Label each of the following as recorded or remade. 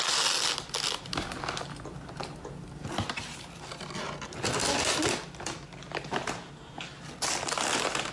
recorded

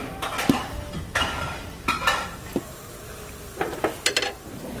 recorded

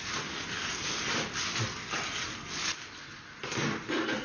recorded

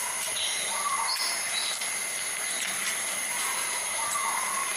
recorded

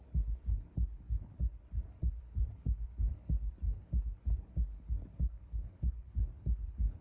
remade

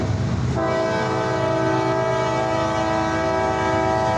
recorded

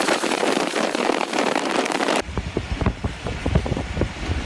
remade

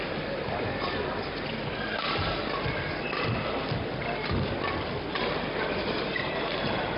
recorded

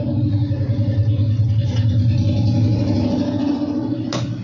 recorded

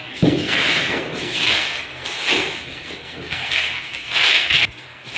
remade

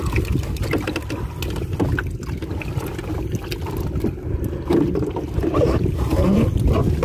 recorded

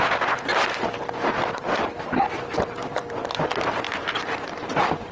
remade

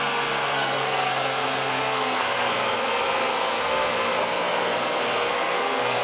remade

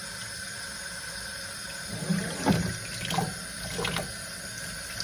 recorded